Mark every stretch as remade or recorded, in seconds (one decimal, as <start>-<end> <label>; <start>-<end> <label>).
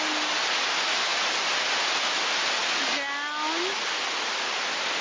0.0-5.0 recorded